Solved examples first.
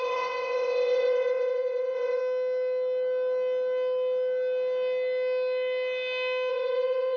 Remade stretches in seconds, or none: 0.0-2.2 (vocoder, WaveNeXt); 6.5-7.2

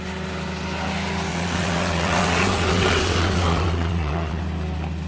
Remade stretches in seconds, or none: 1.3-4.4 (vocoder, WaveNeXt)